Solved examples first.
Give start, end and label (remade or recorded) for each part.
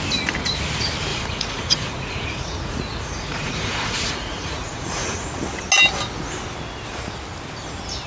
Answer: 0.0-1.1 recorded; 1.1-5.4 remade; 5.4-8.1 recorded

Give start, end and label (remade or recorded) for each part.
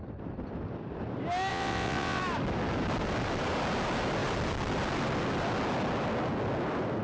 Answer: 0.0-1.5 recorded; 1.5-2.2 remade; 2.2-7.0 recorded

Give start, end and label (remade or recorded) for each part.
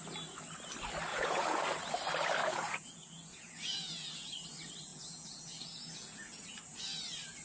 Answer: 0.0-1.1 recorded; 1.1-1.6 remade; 1.6-2.4 recorded; 2.4-4.3 remade; 4.3-4.9 recorded; 4.9-6.8 remade; 6.8-7.4 recorded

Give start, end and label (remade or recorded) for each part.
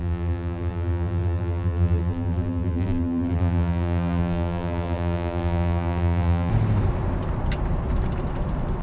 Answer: 0.0-6.5 remade; 6.5-8.8 recorded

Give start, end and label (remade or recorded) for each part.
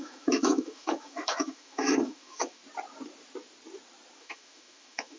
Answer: 0.0-2.6 remade; 2.6-4.2 recorded; 4.2-5.2 remade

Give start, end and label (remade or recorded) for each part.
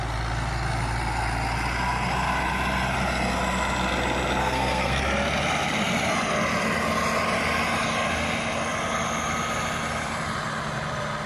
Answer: 0.0-4.4 recorded; 4.4-5.0 remade; 5.0-11.3 recorded